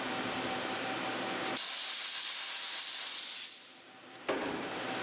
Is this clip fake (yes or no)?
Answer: no